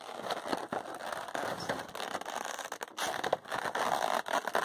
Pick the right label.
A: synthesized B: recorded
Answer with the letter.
B